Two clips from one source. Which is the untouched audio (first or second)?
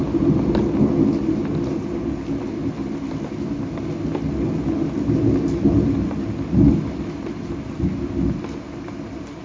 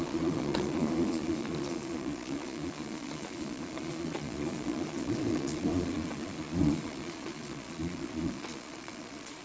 first